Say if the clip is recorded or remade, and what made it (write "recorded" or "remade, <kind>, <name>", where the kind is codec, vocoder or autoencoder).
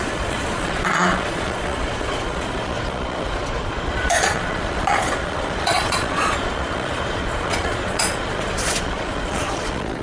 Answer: remade, vocoder, Vocos